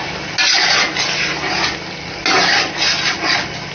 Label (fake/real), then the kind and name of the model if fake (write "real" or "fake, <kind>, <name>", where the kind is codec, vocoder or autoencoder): real